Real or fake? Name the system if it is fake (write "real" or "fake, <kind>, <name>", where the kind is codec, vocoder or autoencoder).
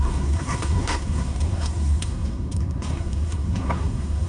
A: fake, codec, SNAC